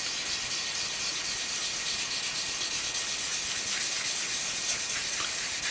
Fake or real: real